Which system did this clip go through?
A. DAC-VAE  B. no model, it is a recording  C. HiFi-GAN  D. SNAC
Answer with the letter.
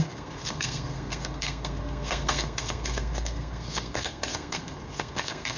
D